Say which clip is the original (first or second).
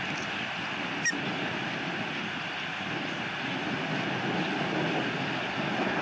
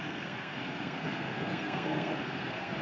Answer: first